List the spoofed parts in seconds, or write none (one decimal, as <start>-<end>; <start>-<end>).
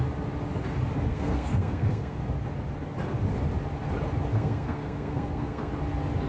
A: 1.1-2.2; 4.3-5.7